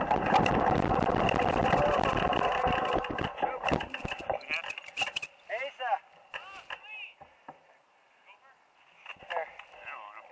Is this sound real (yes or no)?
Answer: yes